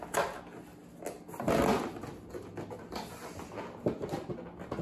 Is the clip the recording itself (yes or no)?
yes